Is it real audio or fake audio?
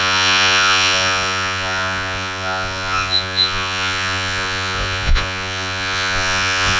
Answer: fake